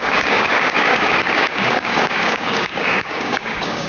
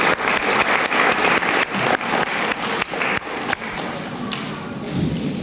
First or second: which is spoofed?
first